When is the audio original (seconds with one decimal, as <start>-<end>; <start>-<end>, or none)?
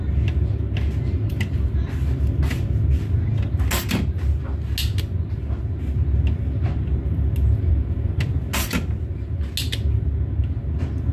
0.0-11.1